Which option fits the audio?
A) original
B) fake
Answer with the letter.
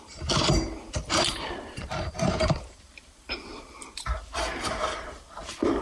B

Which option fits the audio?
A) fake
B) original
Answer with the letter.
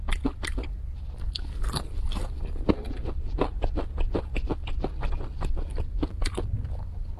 B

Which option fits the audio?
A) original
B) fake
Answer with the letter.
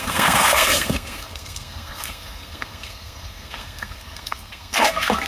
B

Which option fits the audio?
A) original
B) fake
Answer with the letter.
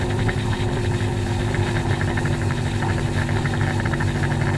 A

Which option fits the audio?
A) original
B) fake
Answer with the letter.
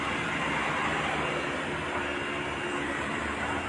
A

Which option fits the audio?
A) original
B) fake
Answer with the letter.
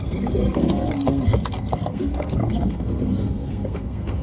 B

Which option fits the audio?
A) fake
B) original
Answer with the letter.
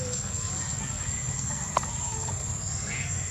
A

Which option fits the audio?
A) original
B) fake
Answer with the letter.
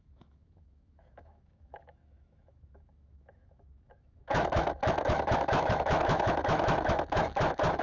B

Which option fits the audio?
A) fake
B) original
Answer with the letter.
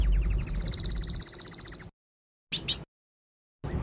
B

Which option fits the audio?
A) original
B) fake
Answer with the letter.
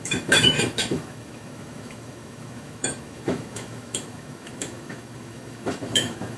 B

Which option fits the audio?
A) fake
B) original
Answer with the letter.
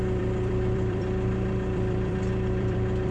A